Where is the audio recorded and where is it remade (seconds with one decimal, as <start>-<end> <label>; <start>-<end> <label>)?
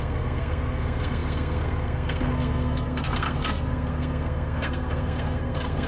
0.0-5.9 remade